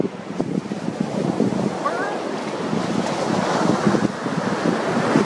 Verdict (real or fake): real